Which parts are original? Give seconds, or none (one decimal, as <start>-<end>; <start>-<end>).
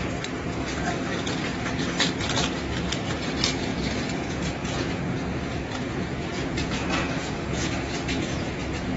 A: 0.0-3.7; 8.6-9.0